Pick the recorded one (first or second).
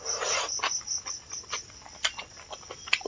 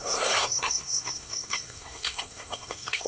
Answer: first